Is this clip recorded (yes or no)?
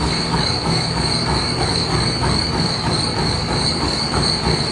no